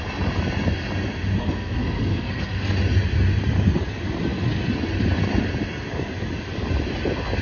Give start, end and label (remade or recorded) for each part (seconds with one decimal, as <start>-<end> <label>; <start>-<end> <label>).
0.0-1.4 recorded; 1.4-2.6 remade; 2.6-7.4 recorded